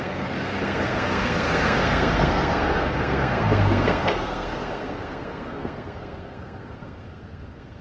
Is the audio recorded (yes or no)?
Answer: no